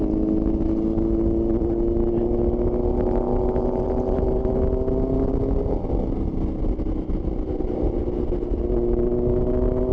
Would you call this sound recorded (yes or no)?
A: yes